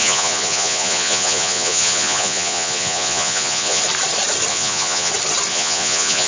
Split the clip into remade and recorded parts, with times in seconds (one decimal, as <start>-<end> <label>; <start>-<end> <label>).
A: 0.0-3.8 remade; 3.8-4.5 recorded; 4.5-5.1 remade; 5.1-5.5 recorded; 5.5-6.3 remade